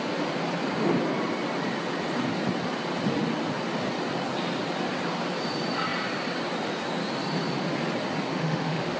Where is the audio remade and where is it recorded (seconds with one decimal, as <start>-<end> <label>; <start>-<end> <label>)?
0.0-8.3 recorded; 8.3-9.0 remade